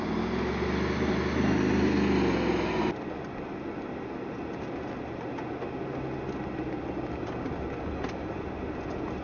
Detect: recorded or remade recorded